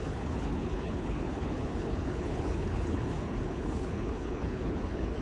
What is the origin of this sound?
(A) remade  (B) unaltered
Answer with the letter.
A